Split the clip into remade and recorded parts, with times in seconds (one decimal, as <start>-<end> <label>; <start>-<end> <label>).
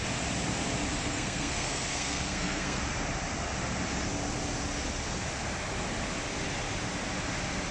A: 0.0-1.0 recorded; 1.0-2.8 remade; 2.8-7.7 recorded